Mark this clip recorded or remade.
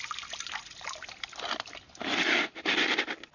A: recorded